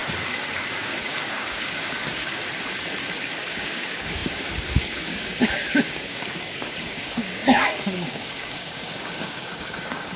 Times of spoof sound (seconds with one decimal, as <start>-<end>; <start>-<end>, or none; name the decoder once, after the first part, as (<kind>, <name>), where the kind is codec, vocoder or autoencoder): 0.7-2.4 (codec, DAC); 3.5-10.2